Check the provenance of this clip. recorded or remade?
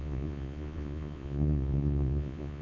remade